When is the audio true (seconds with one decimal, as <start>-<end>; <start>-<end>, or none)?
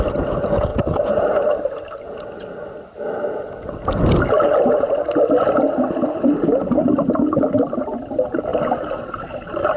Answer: 0.0-9.8